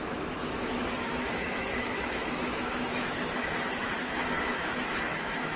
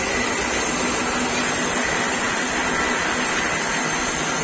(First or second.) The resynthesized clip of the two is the first